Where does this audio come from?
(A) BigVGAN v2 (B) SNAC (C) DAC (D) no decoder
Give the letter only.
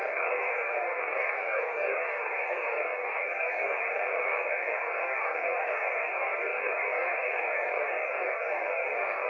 C